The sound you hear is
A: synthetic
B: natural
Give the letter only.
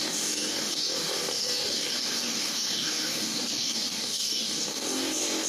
A